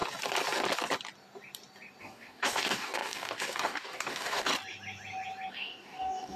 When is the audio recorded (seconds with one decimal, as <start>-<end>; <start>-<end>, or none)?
0.0-2.0; 4.5-5.5